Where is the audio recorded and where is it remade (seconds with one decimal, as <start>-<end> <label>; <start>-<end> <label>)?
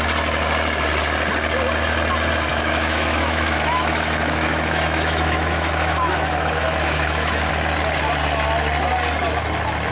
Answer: 0.0-2.5 recorded; 2.5-7.5 remade; 7.5-9.9 recorded